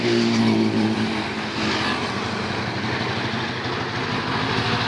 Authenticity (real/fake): real